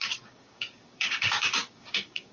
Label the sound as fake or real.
fake